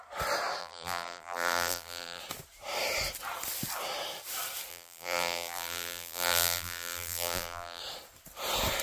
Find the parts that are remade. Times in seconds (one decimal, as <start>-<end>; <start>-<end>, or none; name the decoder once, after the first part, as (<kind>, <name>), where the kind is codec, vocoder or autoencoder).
0.6-2.2 (vocoder, BigVGAN v2); 4.7-7.8